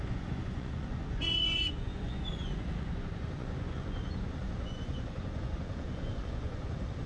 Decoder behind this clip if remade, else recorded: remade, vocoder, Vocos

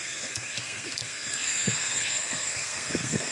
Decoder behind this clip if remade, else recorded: remade, codec, SNAC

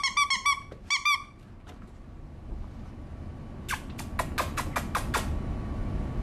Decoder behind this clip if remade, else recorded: recorded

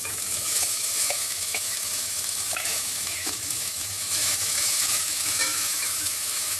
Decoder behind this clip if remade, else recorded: remade, autoencoder, DAC-VAE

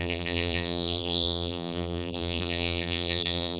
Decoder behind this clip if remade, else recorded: remade, vocoder, BigVGAN v2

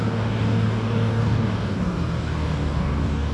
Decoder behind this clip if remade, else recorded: remade, codec, DAC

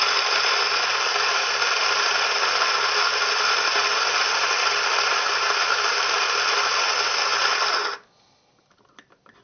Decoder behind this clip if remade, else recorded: recorded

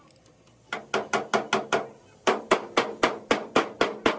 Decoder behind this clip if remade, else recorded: recorded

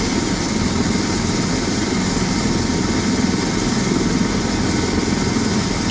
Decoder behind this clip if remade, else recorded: recorded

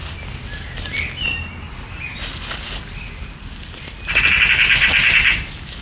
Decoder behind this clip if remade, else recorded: recorded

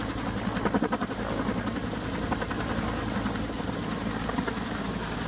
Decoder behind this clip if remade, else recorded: recorded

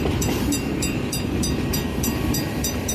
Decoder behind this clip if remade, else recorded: remade, vocoder, BigVGAN v2